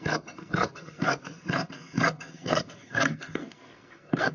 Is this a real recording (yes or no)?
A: no